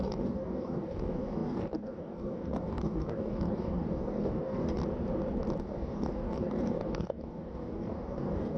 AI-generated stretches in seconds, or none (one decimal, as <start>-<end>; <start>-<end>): 0.0-4.8; 5.6-8.6